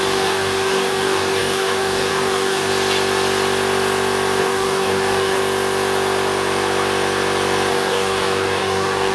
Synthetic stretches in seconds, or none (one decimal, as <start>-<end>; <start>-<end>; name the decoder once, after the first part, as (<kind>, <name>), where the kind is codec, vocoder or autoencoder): 0.0-2.7 (codec, DAC); 4.4-5.4; 7.7-9.1